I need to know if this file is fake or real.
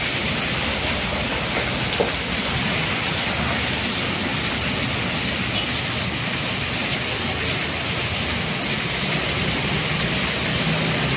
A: real